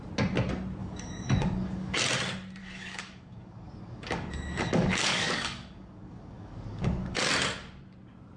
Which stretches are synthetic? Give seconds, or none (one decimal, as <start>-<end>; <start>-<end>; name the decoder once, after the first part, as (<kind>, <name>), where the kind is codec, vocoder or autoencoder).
0.8-2.0 (codec, DAC); 2.6-7.2